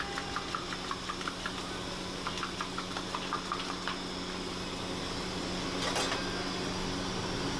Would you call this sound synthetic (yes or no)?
no